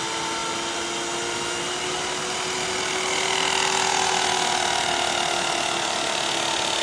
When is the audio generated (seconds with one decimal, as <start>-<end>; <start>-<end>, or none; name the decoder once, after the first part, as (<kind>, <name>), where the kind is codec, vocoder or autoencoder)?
none